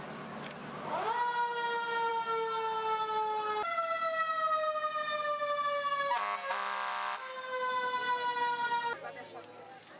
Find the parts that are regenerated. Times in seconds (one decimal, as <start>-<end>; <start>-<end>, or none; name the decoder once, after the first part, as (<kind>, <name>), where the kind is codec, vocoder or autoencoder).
none

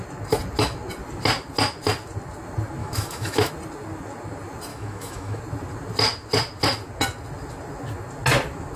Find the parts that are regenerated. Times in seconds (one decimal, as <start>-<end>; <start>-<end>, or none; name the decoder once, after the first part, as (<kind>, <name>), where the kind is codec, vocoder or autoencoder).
2.8-3.5 (autoencoder, DAC-VAE); 4.7-5.4

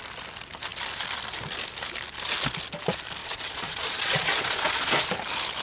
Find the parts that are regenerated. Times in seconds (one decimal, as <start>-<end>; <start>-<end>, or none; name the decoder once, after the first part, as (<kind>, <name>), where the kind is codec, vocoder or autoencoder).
3.2-5.1 (vocoder, Vocos)